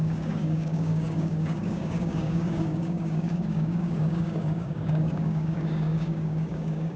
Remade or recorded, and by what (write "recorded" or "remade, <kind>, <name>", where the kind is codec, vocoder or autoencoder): remade, codec, DAC